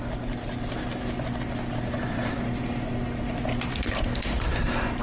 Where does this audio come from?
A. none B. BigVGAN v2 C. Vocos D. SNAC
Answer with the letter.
A